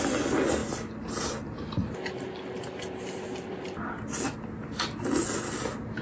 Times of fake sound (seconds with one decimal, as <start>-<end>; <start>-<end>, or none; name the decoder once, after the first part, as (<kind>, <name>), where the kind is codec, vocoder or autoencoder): none